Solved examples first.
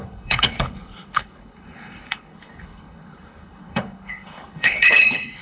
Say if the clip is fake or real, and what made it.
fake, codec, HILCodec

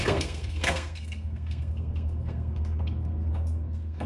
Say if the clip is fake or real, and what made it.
fake, codec, SNAC